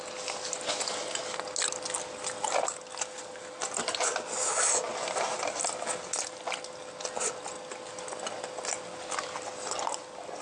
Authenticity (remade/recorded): recorded